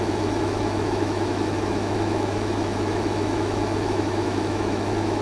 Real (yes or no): no